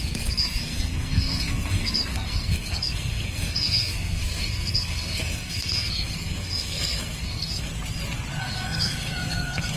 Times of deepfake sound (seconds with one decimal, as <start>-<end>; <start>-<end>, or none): 0.0-7.7; 8.4-9.8

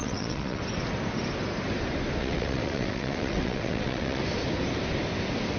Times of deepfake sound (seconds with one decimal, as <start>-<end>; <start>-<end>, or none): 0.0-0.6; 2.2-4.2

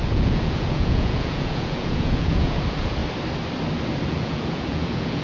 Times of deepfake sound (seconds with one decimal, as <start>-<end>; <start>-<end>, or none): 0.0-3.0; 4.1-5.2

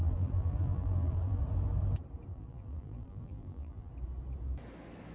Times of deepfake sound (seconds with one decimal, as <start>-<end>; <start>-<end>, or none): 0.0-1.4; 2.3-3.9

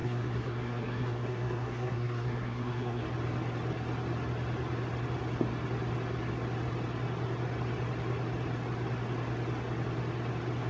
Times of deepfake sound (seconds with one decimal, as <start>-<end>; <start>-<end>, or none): 0.0-3.0

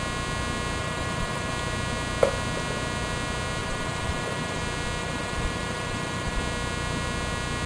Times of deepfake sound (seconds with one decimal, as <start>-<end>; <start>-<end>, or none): 0.8-1.5; 3.6-4.6; 5.0-6.4